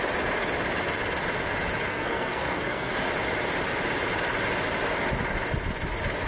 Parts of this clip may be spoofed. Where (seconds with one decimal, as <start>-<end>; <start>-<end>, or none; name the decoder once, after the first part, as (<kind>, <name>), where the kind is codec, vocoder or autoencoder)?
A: 1.9-2.9 (codec, SNAC)